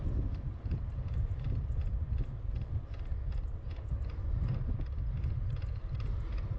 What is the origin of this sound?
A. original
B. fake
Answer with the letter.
A